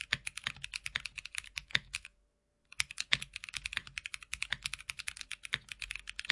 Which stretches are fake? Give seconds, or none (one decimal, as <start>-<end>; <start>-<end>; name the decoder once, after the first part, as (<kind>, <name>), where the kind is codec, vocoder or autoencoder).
1.6-2.5 (autoencoder, DAC-VAE)